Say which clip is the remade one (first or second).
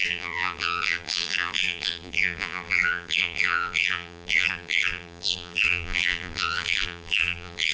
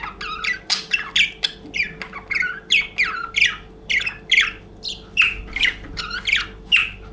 first